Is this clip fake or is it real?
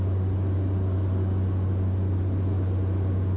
real